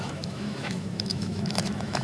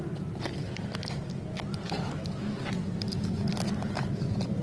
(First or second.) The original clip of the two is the second